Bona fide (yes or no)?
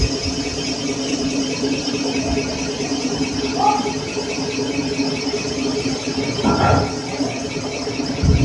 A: yes